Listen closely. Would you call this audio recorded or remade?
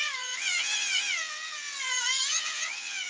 remade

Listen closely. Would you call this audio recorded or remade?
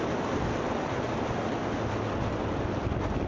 recorded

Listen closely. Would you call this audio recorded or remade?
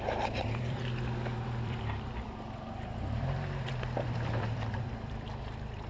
remade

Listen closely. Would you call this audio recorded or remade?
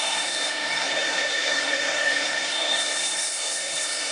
remade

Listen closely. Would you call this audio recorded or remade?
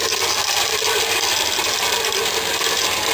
recorded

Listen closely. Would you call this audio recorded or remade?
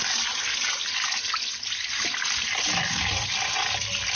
recorded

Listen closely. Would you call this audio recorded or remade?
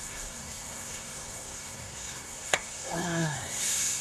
remade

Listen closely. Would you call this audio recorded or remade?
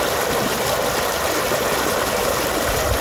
recorded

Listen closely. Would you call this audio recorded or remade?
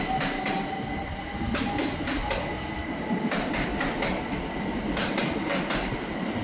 recorded